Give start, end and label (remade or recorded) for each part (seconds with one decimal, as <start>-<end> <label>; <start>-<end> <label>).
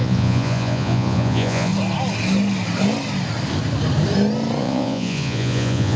0.0-1.7 remade; 1.7-4.6 recorded; 4.6-6.0 remade